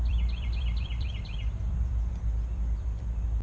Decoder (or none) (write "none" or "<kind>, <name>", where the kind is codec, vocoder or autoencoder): vocoder, BigVGAN v2